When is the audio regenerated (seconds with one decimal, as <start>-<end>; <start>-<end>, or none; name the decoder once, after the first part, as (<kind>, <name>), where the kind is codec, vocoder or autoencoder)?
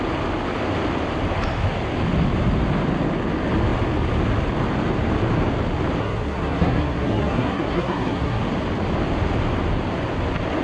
6.0-8.4 (codec, SNAC)